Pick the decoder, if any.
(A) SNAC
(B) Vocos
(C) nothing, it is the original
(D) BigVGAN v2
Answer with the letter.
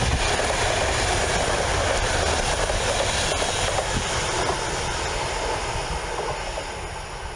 C